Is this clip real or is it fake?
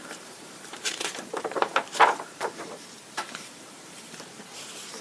fake